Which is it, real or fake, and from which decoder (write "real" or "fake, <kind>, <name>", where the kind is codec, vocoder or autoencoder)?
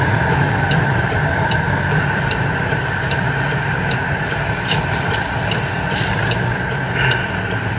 fake, vocoder, BigVGAN v2